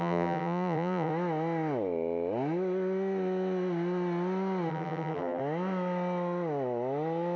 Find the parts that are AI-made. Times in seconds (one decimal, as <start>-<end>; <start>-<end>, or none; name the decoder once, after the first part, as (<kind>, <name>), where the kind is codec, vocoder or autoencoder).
0.0-1.1 (vocoder, BigVGAN v2); 4.7-5.4